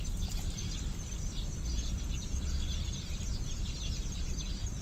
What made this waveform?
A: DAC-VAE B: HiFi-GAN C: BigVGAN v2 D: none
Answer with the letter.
D